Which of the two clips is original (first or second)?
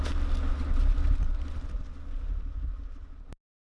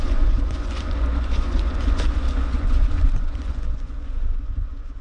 first